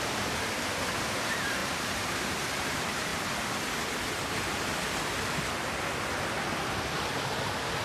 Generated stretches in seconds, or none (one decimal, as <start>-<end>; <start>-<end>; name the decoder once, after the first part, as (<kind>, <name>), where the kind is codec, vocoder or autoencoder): 0.0-3.1 (vocoder, BigVGAN v2)